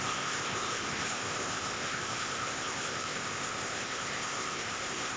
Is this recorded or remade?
remade